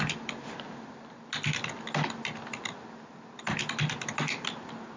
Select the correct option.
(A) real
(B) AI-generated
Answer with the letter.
A